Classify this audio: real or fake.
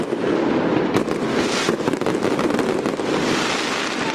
real